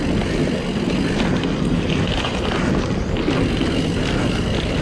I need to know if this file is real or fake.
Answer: real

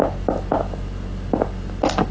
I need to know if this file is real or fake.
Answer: real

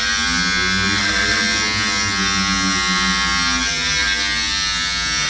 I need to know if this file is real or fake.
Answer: real